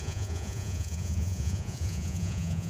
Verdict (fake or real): fake